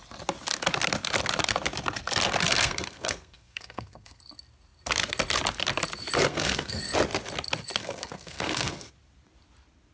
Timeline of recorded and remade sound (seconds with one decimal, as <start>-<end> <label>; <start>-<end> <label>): 0.0-2.4 recorded; 2.4-4.2 remade; 4.2-6.3 recorded; 6.3-6.8 remade; 6.8-7.8 recorded; 7.8-8.9 remade; 8.9-9.9 recorded